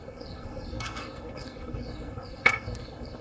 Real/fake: fake